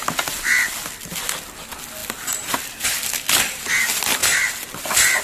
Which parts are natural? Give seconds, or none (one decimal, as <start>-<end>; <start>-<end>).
0.0-5.2